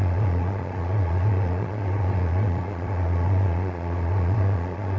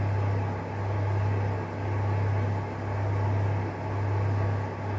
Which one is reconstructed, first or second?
first